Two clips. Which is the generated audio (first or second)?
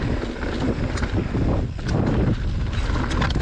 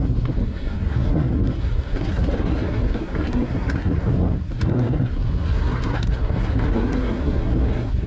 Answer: second